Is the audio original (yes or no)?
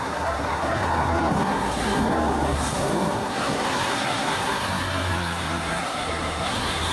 no